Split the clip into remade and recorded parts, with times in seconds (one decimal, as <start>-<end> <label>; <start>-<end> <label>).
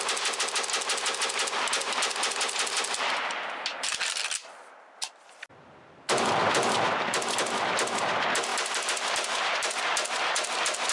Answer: 0.0-8.5 recorded; 8.5-9.8 remade; 9.8-10.9 recorded